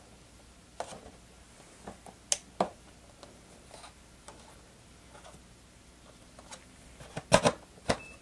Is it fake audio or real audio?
real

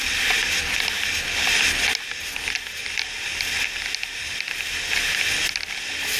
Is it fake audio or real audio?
real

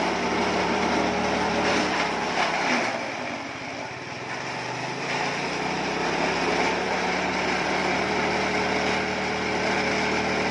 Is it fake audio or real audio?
fake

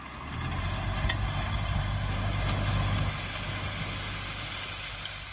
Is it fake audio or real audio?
real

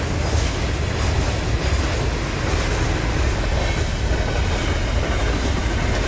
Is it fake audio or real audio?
real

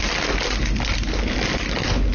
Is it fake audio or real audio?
real